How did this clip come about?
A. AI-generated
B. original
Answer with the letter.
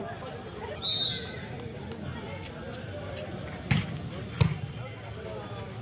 B